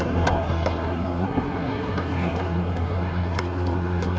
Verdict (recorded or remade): remade